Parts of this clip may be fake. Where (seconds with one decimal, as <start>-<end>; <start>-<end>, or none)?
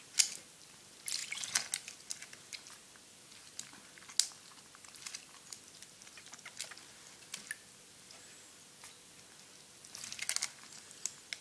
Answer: none